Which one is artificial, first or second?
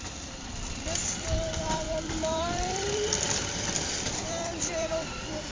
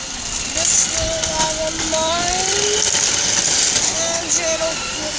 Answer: first